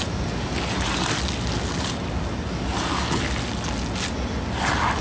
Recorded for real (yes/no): yes